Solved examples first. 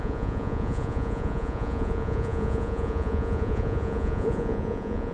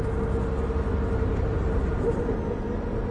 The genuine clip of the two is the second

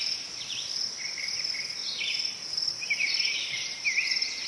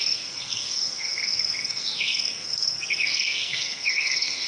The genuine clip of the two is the first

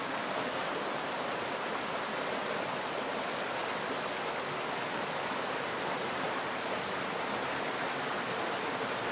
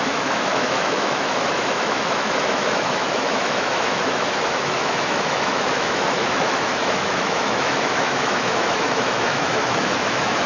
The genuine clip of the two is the first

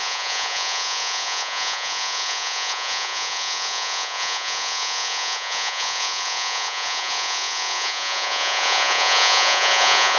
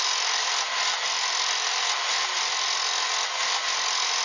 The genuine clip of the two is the second